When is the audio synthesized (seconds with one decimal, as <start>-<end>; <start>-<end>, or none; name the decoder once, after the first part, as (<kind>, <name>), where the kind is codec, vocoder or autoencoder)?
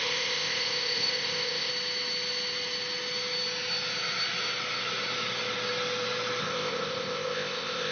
0.0-1.7 (codec, ZipCodec); 6.4-7.9